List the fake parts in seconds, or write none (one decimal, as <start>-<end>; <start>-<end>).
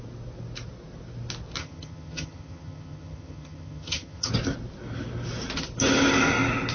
1.6-4.3